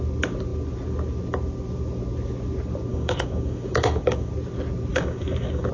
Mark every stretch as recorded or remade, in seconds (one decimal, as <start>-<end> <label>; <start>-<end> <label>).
0.0-2.9 recorded; 2.9-4.3 remade; 4.3-4.9 recorded; 4.9-5.7 remade